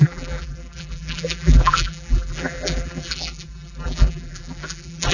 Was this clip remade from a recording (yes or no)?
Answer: yes